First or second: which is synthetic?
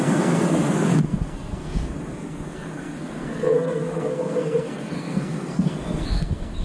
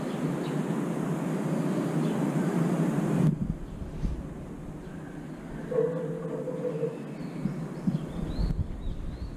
first